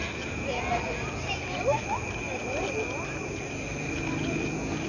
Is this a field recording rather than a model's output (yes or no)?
yes